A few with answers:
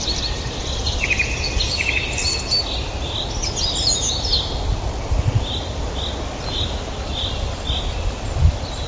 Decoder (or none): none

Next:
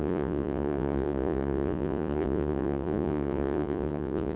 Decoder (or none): vocoder, Vocos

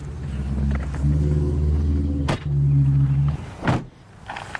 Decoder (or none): none